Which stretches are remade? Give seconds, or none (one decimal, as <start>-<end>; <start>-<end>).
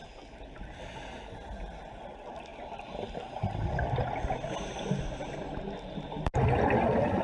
none